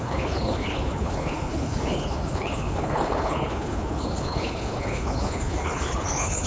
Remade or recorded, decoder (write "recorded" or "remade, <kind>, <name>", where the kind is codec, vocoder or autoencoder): remade, codec, HILCodec